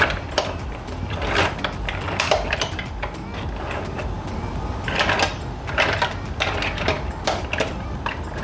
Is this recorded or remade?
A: remade